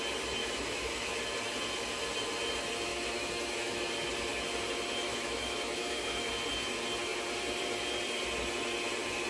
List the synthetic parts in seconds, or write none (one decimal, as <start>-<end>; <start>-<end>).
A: 0.4-1.1; 2.9-3.9; 5.1-6.3